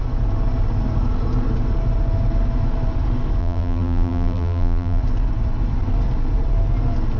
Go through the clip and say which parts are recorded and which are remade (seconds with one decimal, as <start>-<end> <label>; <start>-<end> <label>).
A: 0.0-3.4 recorded; 3.4-5.0 remade; 5.0-7.2 recorded